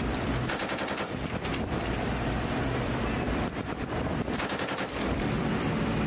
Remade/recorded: remade